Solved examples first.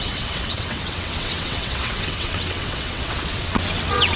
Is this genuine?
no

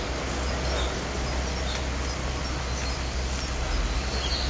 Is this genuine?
yes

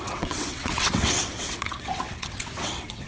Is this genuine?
no